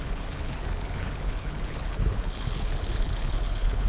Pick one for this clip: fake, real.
fake